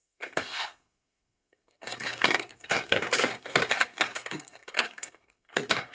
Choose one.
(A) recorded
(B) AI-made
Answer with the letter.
B